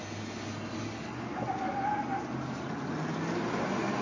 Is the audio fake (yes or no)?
no